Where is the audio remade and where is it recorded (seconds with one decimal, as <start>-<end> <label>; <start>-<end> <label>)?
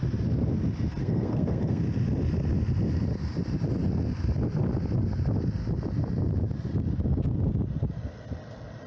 0.0-1.0 recorded; 1.0-1.8 remade; 1.8-8.9 recorded